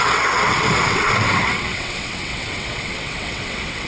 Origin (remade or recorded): remade